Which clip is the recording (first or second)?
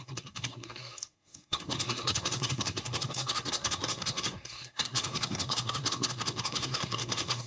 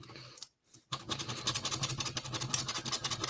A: second